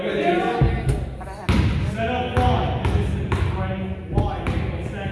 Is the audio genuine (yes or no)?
yes